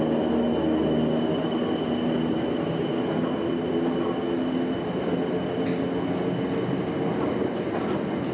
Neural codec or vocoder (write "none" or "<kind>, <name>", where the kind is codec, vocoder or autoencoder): none